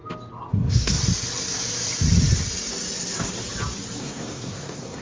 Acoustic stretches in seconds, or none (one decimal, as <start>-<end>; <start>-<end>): 0.0-0.5; 1.0-4.0